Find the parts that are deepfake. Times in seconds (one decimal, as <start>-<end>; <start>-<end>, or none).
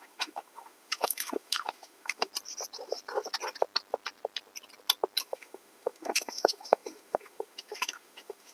0.0-2.3; 5.2-8.5